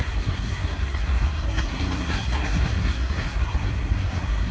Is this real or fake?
fake